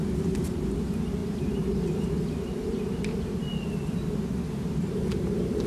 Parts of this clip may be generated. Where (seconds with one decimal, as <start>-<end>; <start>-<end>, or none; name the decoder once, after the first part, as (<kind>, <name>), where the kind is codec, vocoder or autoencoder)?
none